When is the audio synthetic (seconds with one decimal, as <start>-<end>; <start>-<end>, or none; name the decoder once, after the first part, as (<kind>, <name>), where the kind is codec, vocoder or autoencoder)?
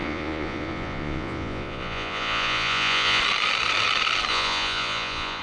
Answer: 0.0-3.2 (vocoder, Vocos); 4.3-5.4